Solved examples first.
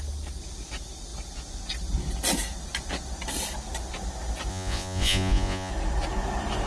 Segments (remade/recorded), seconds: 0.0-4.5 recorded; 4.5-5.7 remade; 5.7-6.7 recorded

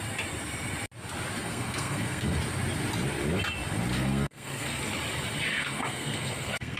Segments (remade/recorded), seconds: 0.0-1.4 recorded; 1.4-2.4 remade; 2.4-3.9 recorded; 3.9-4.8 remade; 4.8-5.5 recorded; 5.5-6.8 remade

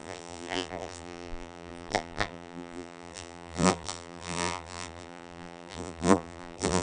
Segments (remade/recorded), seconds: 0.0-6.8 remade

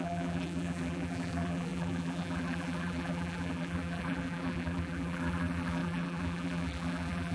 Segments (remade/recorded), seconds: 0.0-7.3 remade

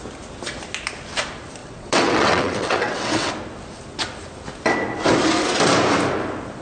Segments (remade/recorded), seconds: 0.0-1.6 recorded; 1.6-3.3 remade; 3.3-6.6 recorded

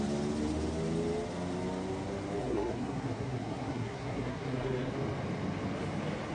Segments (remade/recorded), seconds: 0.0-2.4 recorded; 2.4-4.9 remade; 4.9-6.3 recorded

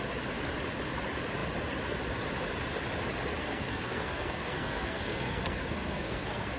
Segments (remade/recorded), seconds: 0.0-3.4 recorded; 3.4-6.6 remade